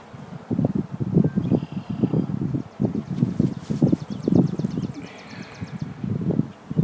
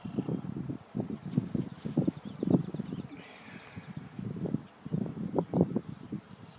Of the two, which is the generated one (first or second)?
second